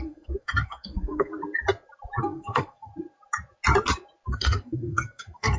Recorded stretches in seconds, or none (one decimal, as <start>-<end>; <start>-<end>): 1.3-2.2; 2.9-4.3